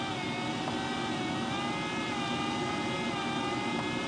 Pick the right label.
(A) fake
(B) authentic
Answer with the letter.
B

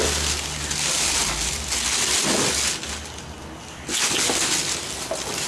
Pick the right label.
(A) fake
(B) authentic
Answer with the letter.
B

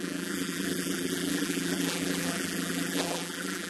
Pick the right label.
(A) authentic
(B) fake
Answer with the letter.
B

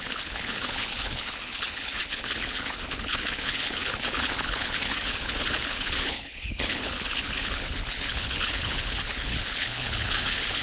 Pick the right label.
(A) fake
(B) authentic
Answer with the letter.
A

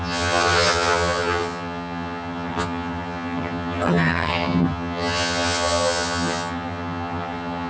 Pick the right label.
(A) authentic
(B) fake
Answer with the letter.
B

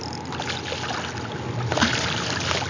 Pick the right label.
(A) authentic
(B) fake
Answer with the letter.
A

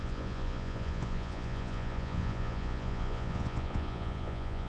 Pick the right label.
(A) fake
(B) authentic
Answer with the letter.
A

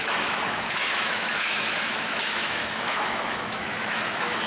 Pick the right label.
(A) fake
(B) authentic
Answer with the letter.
A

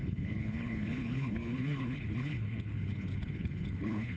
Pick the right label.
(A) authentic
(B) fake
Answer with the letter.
B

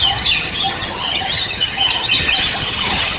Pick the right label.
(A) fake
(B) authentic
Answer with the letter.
A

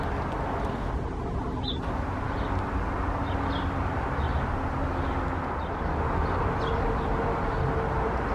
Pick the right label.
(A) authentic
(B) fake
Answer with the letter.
A